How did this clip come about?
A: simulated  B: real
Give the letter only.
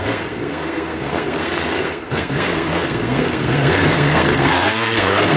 A